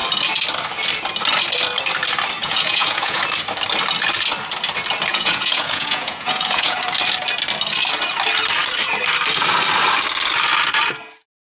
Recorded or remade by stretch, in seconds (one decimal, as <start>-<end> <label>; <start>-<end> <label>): 0.0-2.4 recorded; 2.4-3.2 remade; 3.2-5.1 recorded; 5.1-6.8 remade; 6.8-11.6 recorded